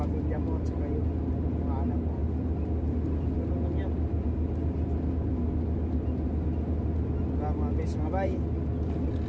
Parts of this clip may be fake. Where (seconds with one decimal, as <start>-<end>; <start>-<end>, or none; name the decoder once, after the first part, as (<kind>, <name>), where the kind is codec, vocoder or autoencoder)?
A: none